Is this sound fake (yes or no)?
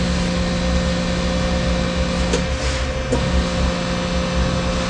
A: no